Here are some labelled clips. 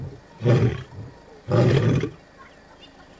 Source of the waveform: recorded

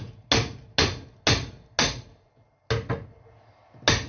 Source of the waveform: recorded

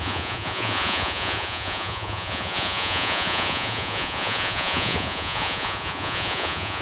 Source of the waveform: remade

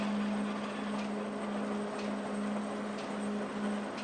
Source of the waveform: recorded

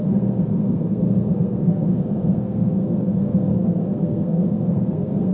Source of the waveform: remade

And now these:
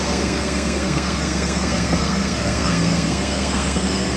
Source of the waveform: remade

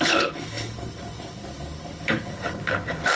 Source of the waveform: remade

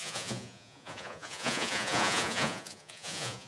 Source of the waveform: remade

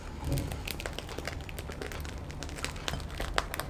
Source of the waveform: recorded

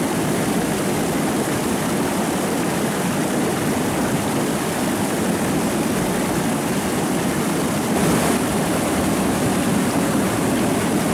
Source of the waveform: recorded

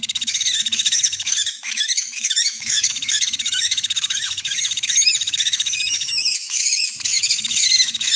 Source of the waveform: remade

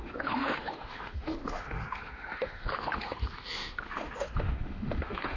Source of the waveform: remade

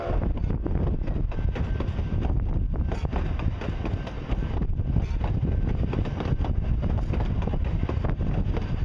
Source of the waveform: recorded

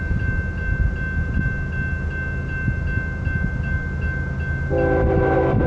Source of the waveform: recorded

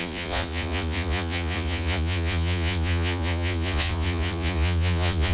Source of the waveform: remade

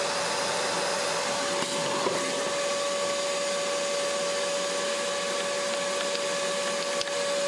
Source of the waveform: recorded